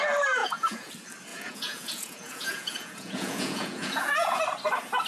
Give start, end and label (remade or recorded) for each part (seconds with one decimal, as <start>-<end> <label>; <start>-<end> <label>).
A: 0.0-0.4 recorded; 0.4-0.9 remade; 0.9-1.3 recorded; 1.3-4.4 remade; 4.4-5.1 recorded